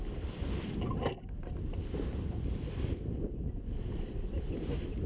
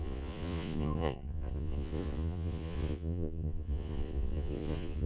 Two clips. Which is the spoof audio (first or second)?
second